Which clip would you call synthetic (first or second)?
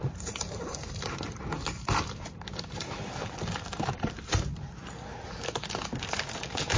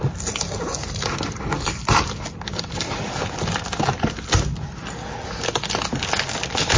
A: first